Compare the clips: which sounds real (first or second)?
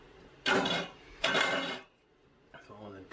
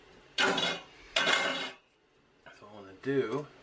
second